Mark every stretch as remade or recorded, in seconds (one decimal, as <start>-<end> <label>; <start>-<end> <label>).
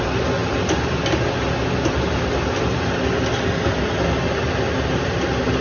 0.0-5.6 recorded